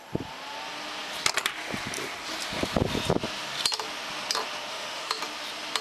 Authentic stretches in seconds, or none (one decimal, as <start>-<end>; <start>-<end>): 0.0-4.7; 5.2-5.8